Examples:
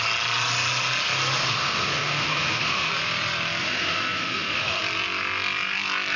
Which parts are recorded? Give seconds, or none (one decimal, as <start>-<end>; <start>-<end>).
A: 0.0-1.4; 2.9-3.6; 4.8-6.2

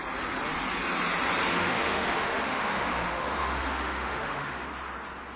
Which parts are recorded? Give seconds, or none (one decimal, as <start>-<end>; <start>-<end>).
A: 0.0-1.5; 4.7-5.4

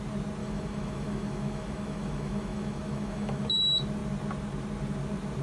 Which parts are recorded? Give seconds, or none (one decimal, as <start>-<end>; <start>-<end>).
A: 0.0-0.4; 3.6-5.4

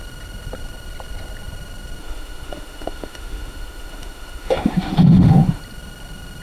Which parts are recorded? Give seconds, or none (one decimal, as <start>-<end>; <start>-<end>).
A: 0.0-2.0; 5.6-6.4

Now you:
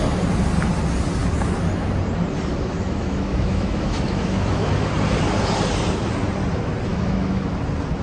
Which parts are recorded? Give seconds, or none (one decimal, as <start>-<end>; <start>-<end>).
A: 0.0-2.5; 4.7-6.9; 7.5-8.0

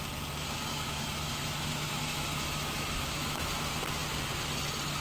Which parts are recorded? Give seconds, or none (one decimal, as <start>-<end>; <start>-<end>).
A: 0.0-0.7; 3.5-5.0

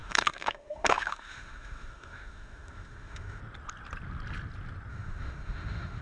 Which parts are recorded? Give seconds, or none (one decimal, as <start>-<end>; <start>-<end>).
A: 3.4-4.9